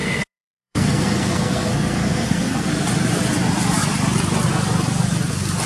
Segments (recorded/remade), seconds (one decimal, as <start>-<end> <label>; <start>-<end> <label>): 0.0-2.7 remade; 2.7-5.7 recorded